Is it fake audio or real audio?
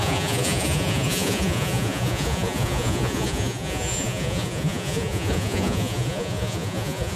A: fake